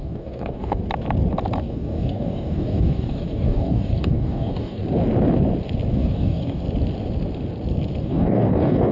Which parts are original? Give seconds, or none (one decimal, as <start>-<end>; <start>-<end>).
0.8-1.6; 4.8-5.9; 6.6-8.0